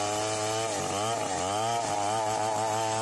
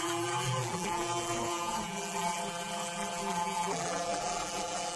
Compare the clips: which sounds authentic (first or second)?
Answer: first